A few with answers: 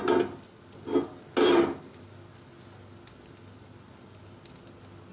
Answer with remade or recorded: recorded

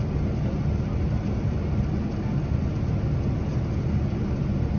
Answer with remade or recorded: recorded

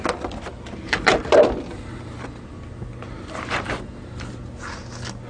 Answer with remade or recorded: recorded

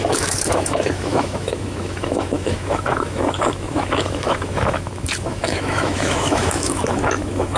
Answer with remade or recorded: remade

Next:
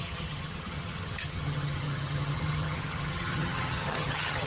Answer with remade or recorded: remade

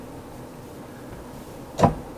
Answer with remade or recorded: recorded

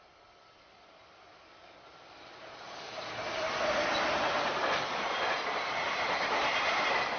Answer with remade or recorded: recorded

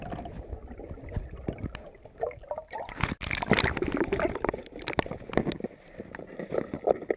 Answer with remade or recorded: recorded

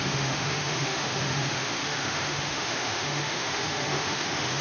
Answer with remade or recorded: remade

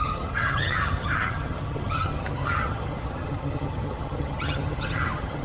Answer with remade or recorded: remade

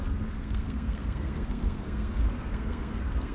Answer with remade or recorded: remade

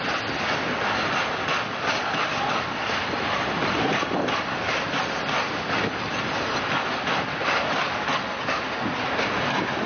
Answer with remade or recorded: recorded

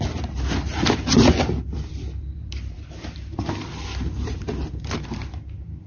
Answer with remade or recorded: remade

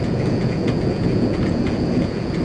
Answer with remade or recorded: remade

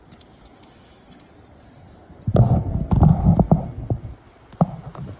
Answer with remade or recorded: recorded